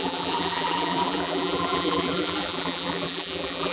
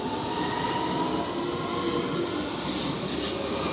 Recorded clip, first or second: second